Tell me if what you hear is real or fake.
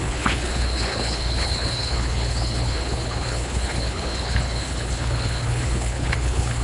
fake